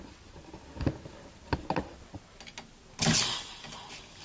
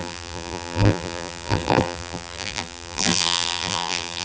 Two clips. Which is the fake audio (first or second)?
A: second